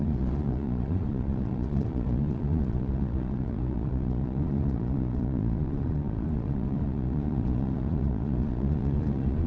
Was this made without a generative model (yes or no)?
no